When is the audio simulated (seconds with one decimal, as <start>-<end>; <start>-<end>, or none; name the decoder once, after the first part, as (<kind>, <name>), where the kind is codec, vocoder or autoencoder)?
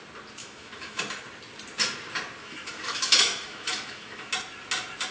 0.4-1.0 (autoencoder, DAC-VAE); 2.4-4.3